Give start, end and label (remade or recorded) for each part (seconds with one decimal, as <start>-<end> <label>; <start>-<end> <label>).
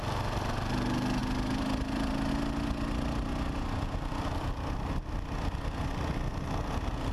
0.0-1.2 recorded; 1.2-2.3 remade; 2.3-7.1 recorded